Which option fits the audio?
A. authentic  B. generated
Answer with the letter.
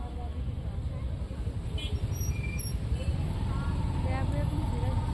A